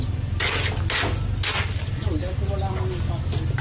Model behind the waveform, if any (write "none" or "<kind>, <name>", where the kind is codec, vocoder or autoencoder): none